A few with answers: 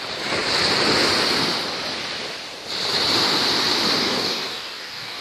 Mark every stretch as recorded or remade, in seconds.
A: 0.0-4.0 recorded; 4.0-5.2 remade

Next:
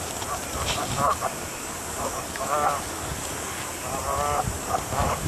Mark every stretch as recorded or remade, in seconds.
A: 0.0-0.8 recorded; 0.8-3.8 remade; 3.8-4.6 recorded; 4.6-5.3 remade